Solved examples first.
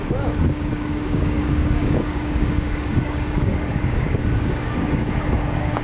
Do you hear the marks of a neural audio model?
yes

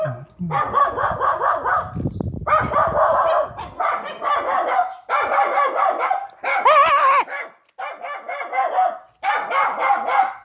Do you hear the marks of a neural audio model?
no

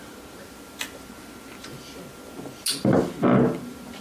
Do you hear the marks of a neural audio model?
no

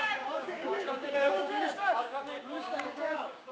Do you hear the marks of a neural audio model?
yes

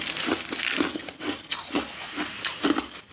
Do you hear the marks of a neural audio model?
no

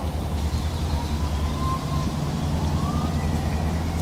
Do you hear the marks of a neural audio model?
no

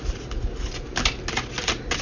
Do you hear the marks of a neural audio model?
no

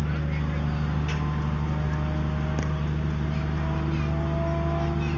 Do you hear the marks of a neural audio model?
no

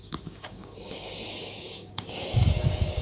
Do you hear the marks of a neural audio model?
yes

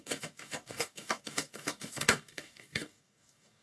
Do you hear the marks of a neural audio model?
yes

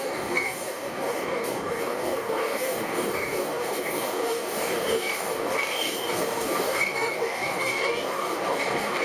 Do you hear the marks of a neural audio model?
yes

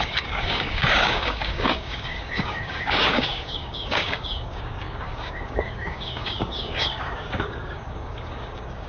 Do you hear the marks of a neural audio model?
yes